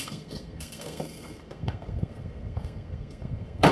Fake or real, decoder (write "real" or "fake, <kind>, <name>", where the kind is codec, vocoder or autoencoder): fake, codec, SNAC